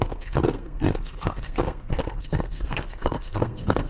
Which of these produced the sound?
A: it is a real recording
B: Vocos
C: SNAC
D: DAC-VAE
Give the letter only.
C